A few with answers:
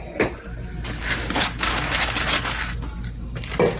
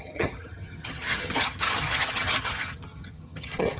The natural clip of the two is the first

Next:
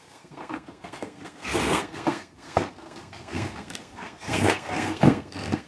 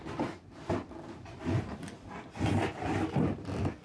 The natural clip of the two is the second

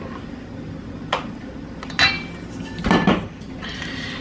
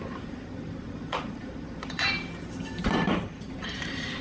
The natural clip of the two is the first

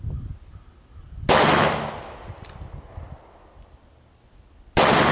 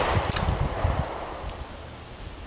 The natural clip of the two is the first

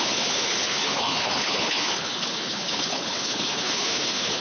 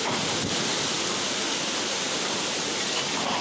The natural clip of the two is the second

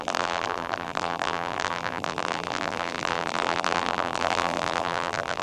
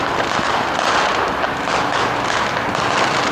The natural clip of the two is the second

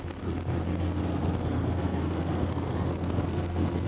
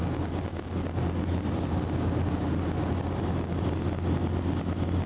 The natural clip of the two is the second